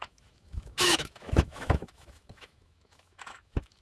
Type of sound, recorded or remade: remade